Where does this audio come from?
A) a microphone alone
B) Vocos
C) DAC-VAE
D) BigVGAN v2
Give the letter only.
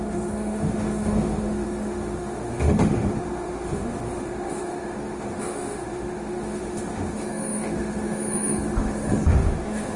C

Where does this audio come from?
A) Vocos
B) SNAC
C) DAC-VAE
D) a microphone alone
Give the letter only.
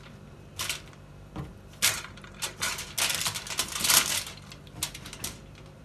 D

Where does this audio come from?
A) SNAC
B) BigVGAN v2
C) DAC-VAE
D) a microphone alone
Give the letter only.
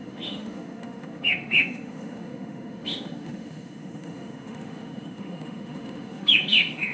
C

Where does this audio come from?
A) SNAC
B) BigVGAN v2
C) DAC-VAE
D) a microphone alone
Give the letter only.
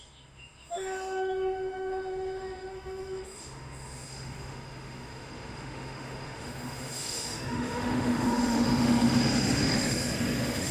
C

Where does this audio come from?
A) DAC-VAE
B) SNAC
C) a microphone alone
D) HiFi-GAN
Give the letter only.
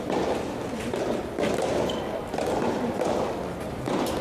C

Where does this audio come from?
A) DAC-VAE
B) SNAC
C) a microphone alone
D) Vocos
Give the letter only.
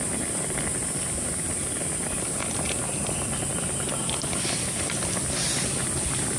C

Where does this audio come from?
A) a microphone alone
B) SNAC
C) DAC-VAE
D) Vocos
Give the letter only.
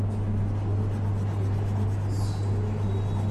A